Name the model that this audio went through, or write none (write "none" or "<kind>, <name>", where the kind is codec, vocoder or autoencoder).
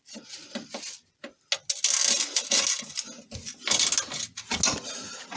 none